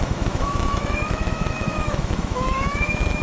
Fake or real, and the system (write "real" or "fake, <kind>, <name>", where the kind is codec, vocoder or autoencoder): fake, autoencoder, DAC-VAE